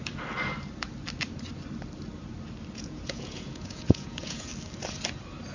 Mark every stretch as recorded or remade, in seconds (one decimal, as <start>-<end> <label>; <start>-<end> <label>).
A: 0.0-2.7 recorded; 2.7-4.5 remade; 4.5-5.5 recorded